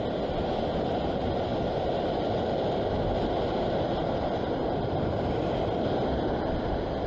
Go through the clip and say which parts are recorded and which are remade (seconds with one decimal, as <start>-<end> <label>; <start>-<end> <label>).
0.0-7.1 recorded